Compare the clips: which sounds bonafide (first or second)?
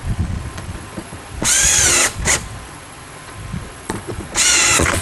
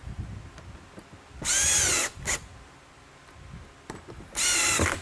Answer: second